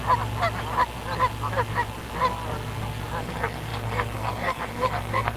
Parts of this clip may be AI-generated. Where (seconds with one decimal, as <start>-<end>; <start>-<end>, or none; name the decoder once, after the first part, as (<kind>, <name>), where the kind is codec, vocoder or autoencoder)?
3.2-5.4 (codec, SNAC)